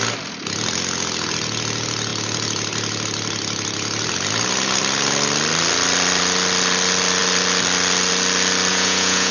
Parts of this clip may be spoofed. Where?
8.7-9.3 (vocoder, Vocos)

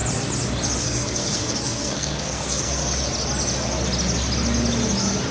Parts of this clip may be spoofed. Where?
0.8-2.8 (codec, SNAC)

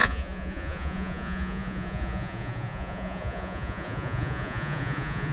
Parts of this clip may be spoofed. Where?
0.0-5.3 (vocoder, Vocos)

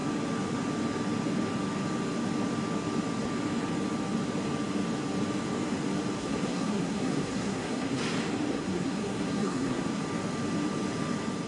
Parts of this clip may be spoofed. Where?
6.2-8.0 (codec, SNAC); 8.5-10.0

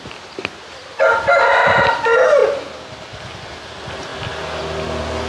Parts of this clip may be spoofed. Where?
none

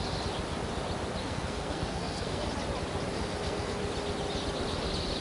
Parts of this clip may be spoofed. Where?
1.2-2.5 (codec, SNAC); 3.1-3.8